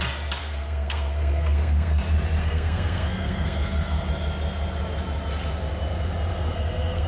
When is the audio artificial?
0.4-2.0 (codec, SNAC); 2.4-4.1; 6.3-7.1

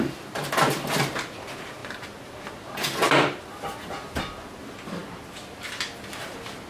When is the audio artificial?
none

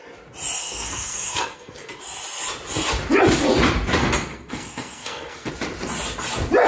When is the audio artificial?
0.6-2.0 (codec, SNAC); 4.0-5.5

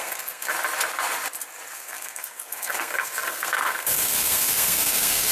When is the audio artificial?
0.0-0.5 (codec, SNAC); 1.7-5.3

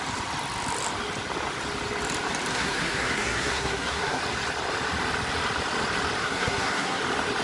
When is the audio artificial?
2.5-4.2 (codec, SNAC); 6.2-7.0

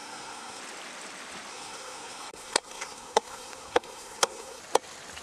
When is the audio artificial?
0.0-0.6 (codec, SNAC); 1.5-4.6